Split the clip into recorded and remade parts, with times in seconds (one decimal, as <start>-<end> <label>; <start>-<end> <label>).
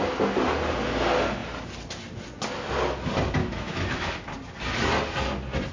0.0-3.4 recorded; 3.4-4.1 remade; 4.1-5.7 recorded